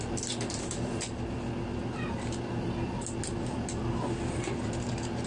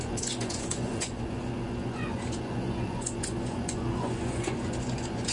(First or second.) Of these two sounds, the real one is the first